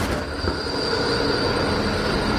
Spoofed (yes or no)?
no